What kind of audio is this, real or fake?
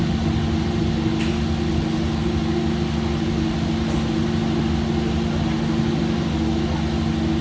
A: real